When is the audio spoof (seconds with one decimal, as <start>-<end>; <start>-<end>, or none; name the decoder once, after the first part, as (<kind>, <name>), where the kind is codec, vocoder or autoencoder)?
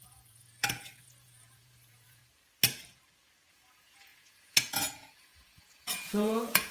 0.0-2.2 (vocoder, Vocos); 3.5-6.7